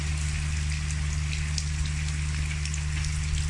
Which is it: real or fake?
real